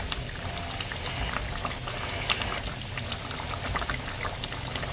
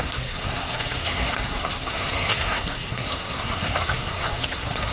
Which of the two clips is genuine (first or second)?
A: first